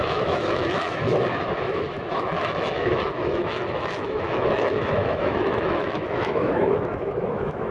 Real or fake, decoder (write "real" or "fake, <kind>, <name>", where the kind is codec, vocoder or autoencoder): fake, autoencoder, DAC-VAE